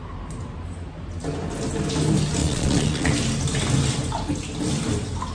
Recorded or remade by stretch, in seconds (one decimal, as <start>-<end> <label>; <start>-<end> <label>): 0.0-2.4 recorded; 2.4-3.1 remade; 3.1-5.3 recorded